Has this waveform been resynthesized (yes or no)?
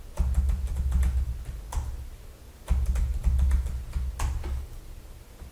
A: no